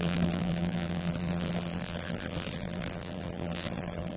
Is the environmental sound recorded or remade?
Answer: remade